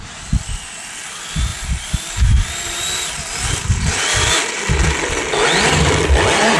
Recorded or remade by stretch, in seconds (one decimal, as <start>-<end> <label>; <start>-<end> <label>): 0.0-6.6 recorded